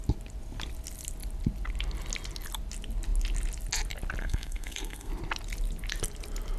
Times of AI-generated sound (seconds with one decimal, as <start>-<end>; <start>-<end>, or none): 4.2-5.1